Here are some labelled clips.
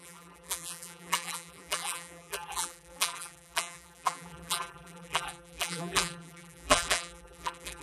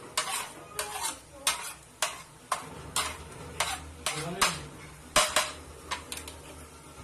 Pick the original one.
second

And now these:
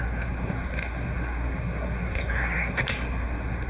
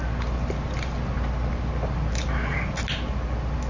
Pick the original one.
second